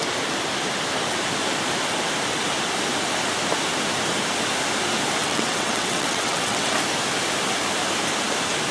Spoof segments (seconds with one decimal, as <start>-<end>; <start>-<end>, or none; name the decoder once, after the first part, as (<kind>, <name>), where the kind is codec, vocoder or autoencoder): 5.2-6.7 (vocoder, WaveNeXt)